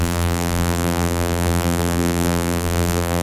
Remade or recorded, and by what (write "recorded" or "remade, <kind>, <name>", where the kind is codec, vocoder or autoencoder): remade, vocoder, BigVGAN v2